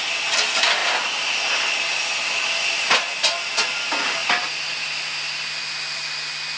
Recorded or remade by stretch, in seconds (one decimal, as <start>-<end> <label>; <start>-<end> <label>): 0.0-6.6 recorded